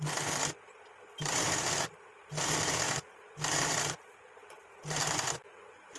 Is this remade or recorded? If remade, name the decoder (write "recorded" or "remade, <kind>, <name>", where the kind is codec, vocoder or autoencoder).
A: recorded